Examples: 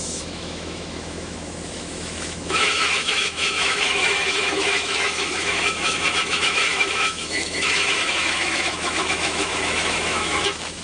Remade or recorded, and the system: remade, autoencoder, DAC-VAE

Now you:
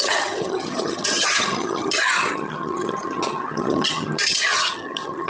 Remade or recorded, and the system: remade, vocoder, HiFi-GAN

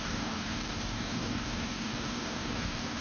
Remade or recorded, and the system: remade, codec, DAC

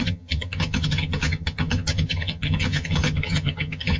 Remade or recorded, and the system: remade, vocoder, HiFi-GAN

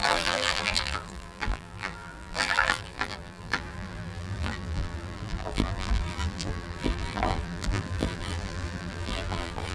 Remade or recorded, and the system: remade, vocoder, BigVGAN v2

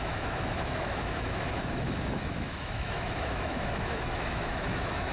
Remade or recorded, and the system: remade, autoencoder, DAC-VAE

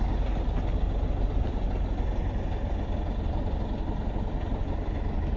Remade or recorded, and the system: recorded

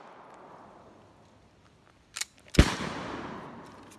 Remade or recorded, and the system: recorded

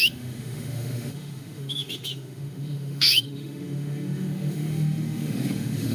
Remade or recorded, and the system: remade, autoencoder, DAC-VAE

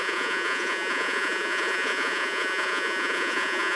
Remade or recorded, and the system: remade, vocoder, Vocos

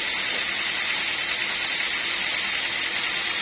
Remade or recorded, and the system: recorded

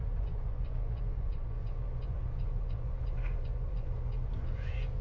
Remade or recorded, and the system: remade, vocoder, Vocos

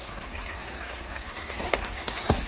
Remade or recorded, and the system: remade, codec, SNAC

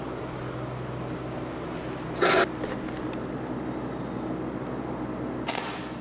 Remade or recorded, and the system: recorded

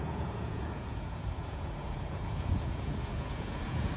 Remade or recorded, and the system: remade, vocoder, Vocos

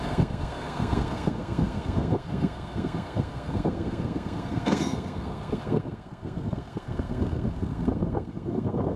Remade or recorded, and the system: remade, codec, SNAC